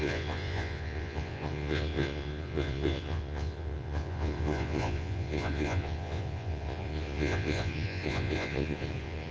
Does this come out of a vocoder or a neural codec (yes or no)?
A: yes